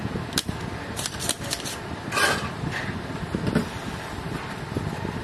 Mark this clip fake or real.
real